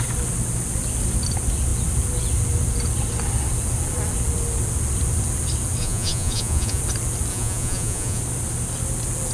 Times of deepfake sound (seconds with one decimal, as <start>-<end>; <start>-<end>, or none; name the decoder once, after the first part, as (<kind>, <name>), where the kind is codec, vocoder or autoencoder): 5.8-6.8 (vocoder, Vocos); 7.3-8.2